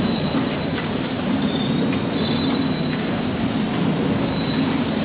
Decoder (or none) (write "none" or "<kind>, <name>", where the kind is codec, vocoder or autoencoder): vocoder, BigVGAN v2